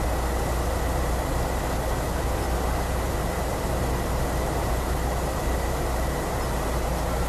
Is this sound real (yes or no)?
yes